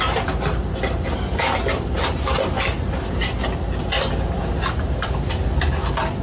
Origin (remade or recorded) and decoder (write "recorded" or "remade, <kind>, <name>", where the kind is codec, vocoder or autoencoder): recorded